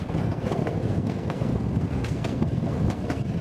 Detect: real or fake fake